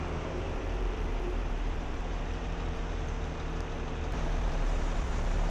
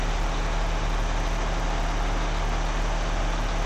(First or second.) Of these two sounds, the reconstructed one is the first